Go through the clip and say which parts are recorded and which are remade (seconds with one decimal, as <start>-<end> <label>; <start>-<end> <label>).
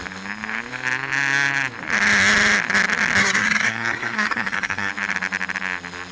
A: 0.0-3.2 recorded; 3.2-4.9 remade; 4.9-6.1 recorded